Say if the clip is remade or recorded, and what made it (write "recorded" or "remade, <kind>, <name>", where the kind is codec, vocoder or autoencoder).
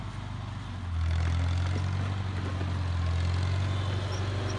recorded